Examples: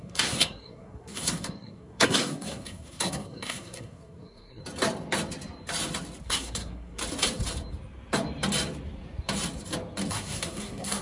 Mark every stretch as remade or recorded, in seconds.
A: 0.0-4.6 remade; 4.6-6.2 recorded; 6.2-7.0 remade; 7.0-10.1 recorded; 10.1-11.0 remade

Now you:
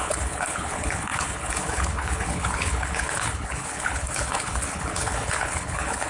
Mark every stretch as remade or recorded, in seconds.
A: 0.0-6.1 remade